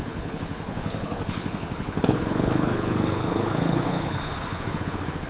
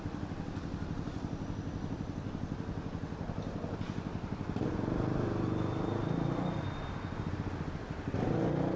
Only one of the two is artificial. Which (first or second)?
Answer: first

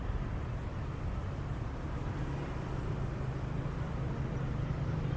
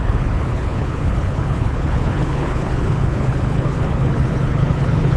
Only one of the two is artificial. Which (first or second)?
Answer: second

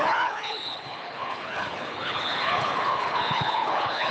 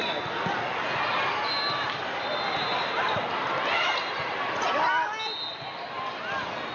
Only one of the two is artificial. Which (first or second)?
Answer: first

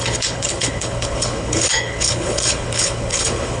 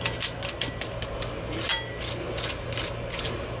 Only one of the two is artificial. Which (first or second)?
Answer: first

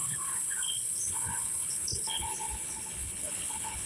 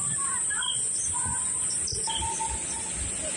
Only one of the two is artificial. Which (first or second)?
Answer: first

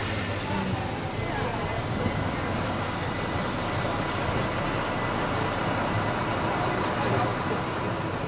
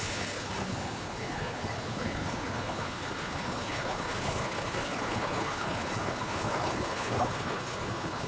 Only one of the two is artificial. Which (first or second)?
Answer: second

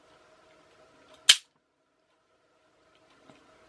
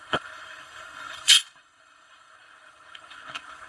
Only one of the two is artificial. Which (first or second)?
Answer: second